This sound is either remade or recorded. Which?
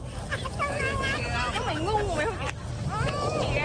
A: recorded